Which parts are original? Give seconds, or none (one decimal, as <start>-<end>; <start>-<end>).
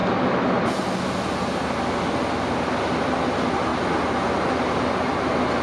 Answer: 0.0-5.6